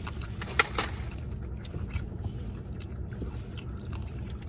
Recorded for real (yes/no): yes